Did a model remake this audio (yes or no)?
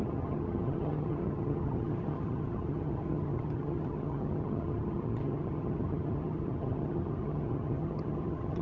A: yes